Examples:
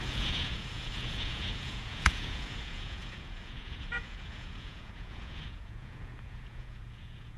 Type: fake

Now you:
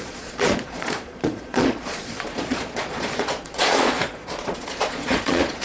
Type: fake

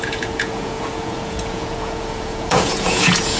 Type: fake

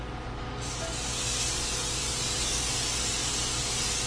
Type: real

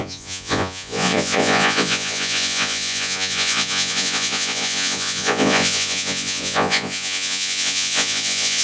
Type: fake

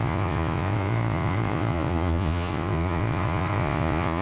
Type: fake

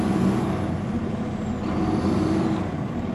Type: real